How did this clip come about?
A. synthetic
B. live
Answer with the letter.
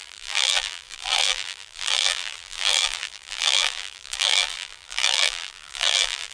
A